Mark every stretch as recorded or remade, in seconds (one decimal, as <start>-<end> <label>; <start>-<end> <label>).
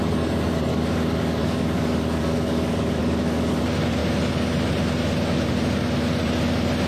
0.0-0.7 recorded; 0.7-3.6 remade; 3.6-6.9 recorded